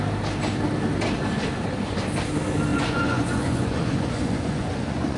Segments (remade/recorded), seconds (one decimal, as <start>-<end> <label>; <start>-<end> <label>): 0.0-2.7 recorded; 2.7-5.2 remade